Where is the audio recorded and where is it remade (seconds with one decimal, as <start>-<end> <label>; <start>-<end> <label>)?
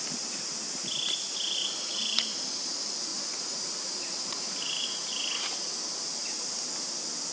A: 0.0-1.6 recorded; 1.6-2.4 remade; 2.4-3.1 recorded; 3.1-5.3 remade; 5.3-7.3 recorded